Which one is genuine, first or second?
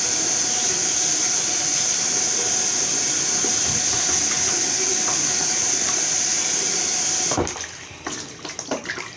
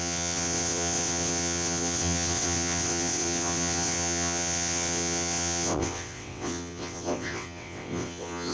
first